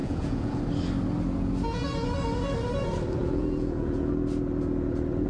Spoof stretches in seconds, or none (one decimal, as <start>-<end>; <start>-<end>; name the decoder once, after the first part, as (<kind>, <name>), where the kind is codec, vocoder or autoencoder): 0.0-0.6 (vocoder, Vocos); 3.2-4.1